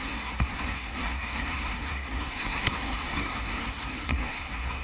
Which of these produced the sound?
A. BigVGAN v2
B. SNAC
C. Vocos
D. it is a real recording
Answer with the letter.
B